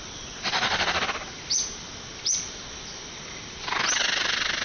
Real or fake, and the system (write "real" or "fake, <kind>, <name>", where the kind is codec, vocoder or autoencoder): real